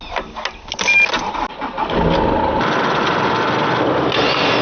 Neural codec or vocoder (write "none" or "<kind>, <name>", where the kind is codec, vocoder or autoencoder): none